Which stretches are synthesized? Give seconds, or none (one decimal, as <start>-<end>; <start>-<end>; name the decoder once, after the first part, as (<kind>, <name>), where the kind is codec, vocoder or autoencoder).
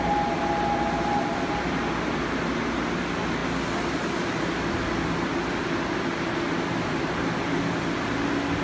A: none